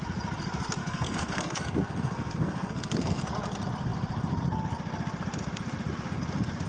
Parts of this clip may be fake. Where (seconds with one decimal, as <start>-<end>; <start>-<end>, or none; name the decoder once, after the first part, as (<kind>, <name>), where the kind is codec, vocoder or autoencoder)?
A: 0.8-3.2 (codec, SNAC)